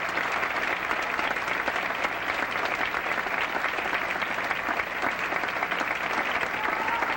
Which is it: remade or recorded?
recorded